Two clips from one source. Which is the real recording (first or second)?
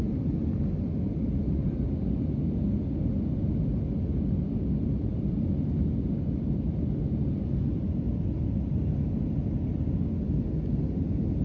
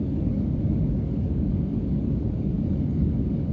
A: first